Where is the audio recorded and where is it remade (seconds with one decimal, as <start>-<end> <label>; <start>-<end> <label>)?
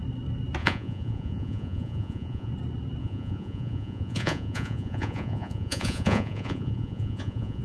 0.0-0.6 recorded; 0.6-2.5 remade; 2.5-3.0 recorded; 3.0-7.6 remade